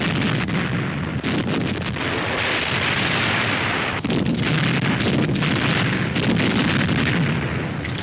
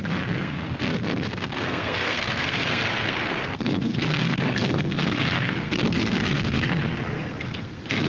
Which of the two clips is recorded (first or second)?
first